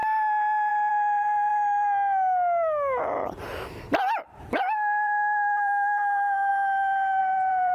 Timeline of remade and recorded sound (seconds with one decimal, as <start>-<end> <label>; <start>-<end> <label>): 0.0-0.7 recorded; 0.7-1.5 remade; 1.5-4.3 recorded; 4.3-6.5 remade; 6.5-7.2 recorded; 7.2-7.7 remade

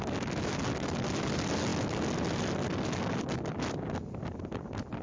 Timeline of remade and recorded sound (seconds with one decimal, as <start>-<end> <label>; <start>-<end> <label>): 0.0-5.0 recorded

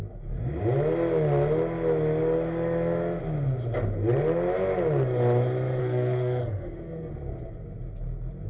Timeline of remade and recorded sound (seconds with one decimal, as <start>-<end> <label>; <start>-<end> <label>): 0.0-5.8 recorded; 5.8-7.1 remade; 7.1-8.5 recorded

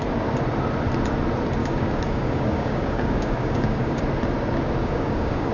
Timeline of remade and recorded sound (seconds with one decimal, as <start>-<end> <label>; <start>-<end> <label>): 0.0-1.6 recorded; 1.6-4.0 remade; 4.0-4.8 recorded; 4.8-5.5 remade

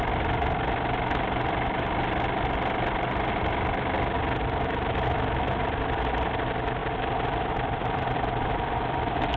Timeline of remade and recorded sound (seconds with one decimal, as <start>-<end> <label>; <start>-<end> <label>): 0.0-9.4 recorded

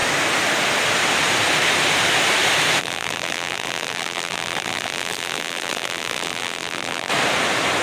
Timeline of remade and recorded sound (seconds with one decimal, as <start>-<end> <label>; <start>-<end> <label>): 0.0-2.8 recorded; 2.8-7.1 remade; 7.1-7.8 recorded